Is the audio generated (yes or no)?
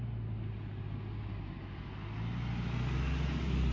no